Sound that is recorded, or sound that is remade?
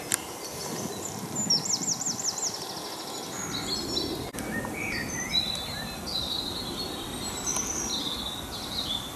recorded